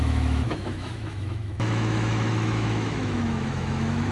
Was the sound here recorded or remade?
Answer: remade